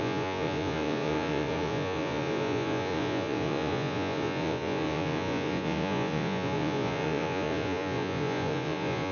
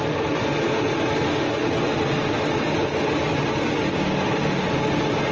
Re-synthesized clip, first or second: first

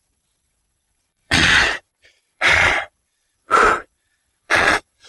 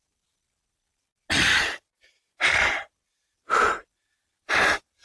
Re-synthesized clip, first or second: first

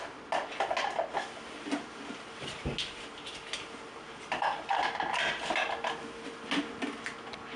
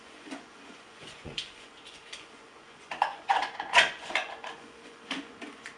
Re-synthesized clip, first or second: second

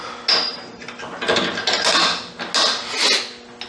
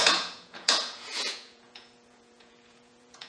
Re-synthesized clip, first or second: second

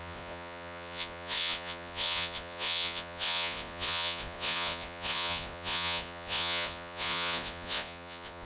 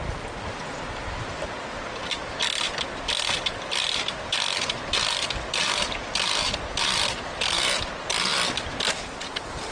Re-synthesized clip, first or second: first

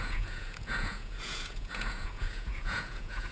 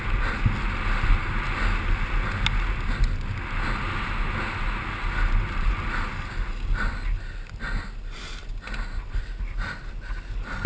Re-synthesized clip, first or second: first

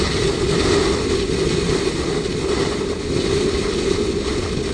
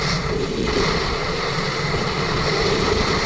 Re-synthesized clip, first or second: second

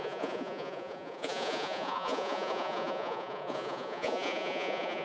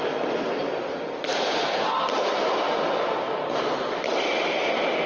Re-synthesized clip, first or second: first